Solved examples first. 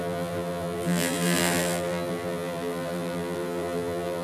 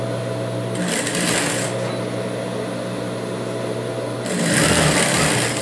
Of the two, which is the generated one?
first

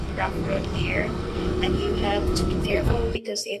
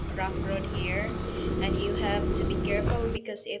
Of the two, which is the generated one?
first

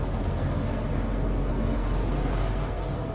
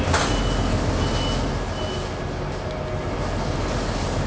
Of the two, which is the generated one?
first